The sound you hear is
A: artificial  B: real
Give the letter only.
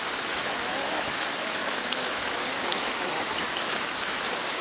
A